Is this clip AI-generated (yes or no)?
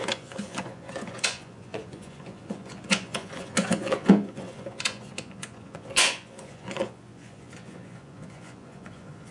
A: yes